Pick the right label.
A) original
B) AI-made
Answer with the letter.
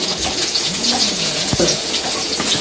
B